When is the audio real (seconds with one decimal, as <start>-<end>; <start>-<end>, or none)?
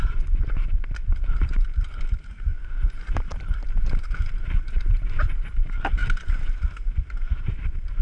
2.5-3.1; 6.0-7.2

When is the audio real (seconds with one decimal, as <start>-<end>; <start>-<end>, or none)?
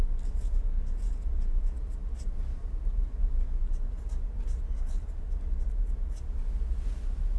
0.0-7.4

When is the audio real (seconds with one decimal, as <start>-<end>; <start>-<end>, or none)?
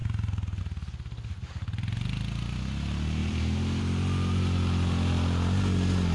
0.6-3.2; 3.8-6.1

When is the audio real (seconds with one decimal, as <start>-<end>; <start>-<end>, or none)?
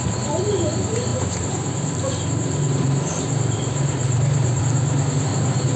0.0-1.1; 4.6-5.3